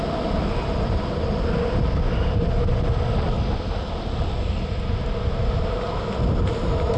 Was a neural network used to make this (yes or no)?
no